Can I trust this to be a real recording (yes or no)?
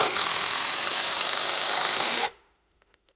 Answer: no